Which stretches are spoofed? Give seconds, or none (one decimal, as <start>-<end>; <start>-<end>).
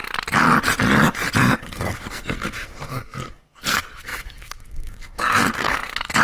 1.4-6.2